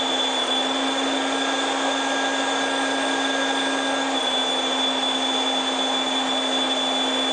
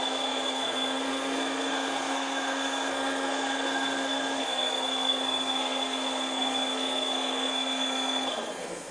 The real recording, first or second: first